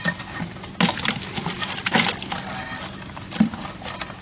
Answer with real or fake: real